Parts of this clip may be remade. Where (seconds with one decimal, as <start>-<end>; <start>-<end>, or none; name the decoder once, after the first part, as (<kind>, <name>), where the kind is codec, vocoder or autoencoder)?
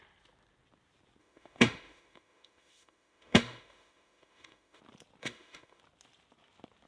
1.2-4.8 (autoencoder, DAC-VAE); 5.2-5.8